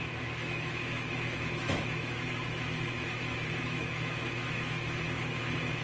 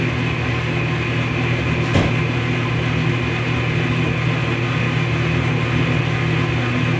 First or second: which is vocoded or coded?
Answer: first